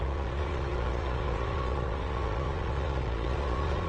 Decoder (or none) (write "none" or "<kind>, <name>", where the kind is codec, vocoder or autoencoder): vocoder, Vocos